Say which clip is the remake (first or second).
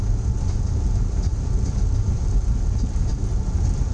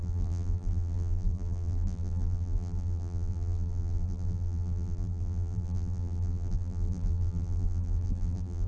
second